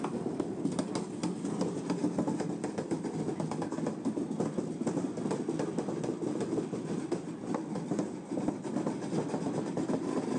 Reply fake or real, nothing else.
real